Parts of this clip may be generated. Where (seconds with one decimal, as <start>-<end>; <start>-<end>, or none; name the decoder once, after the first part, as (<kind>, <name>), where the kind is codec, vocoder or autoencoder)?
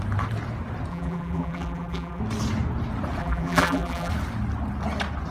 0.9-2.2 (vocoder, BigVGAN v2); 3.2-4.1